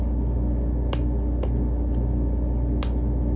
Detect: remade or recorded recorded